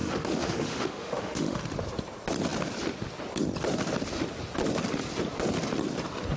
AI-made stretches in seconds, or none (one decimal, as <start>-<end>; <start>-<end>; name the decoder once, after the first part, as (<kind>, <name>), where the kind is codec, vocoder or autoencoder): 0.0-1.6 (autoencoder, DAC-VAE)